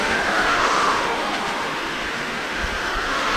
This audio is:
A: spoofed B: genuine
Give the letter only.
A